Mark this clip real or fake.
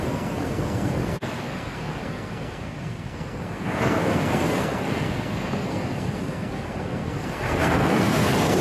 fake